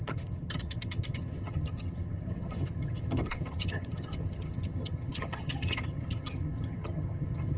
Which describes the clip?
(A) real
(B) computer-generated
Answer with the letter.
B